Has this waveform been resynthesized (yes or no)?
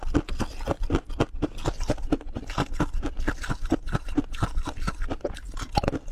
no